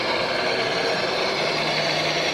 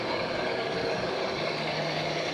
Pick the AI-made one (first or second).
second